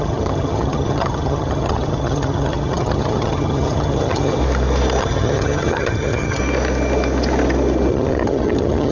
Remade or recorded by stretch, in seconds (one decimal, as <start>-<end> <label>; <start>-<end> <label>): 0.0-4.4 remade; 4.4-5.0 recorded; 5.0-6.4 remade; 6.4-7.9 recorded; 7.9-8.9 remade